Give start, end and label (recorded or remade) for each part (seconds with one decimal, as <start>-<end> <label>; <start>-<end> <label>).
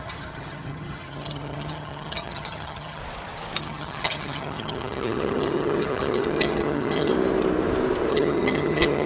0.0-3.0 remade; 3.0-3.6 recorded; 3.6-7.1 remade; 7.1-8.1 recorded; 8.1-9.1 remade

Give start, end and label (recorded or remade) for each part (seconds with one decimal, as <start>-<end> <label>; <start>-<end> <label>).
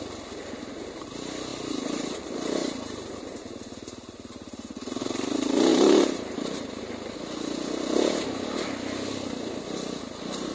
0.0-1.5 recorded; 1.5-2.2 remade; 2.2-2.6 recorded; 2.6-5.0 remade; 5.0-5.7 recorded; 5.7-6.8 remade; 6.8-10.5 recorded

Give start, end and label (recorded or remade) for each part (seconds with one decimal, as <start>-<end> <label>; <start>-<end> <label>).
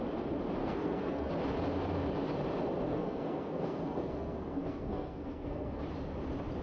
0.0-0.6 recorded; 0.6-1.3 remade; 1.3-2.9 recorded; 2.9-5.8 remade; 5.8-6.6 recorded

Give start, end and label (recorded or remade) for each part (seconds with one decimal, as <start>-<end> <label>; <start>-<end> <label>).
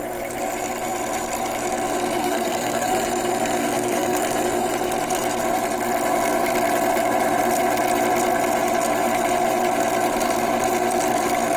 0.0-2.2 recorded; 2.2-2.9 remade; 2.9-3.6 recorded; 3.6-4.2 remade; 4.2-11.6 recorded